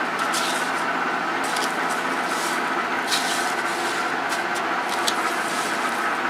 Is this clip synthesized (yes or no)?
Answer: no